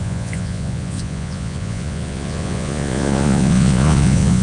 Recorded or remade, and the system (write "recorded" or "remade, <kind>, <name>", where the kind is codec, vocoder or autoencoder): remade, vocoder, Vocos